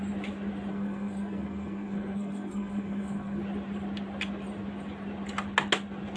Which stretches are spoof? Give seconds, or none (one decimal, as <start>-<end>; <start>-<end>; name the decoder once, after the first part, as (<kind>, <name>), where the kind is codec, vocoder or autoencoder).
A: 0.7-3.4 (codec, SNAC)